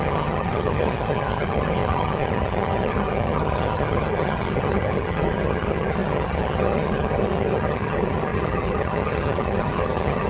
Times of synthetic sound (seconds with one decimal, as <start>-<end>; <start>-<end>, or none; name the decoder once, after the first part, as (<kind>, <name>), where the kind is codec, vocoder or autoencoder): 0.0-10.3 (vocoder, HiFi-GAN)